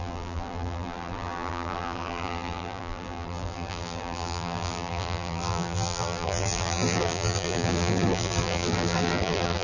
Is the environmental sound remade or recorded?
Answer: remade